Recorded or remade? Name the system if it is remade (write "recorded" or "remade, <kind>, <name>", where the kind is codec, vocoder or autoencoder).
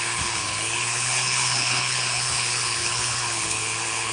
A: remade, codec, HILCodec